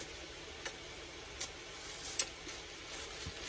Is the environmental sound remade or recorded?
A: recorded